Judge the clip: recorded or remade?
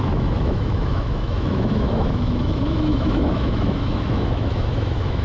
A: remade